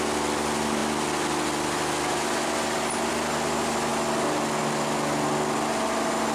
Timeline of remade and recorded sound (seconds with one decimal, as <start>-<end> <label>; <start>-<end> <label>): 0.0-6.3 recorded